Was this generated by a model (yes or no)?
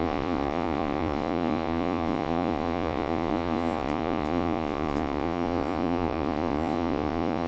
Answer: yes